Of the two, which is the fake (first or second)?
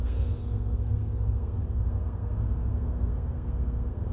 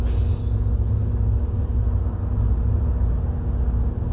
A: first